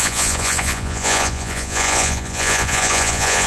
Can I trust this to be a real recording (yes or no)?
no